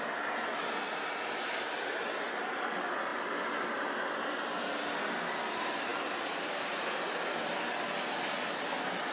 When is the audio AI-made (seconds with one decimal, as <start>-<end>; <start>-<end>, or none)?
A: none